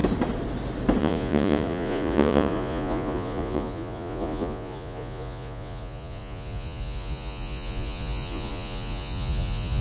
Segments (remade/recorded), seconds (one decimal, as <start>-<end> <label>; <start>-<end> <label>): 0.0-1.0 recorded; 1.0-9.8 remade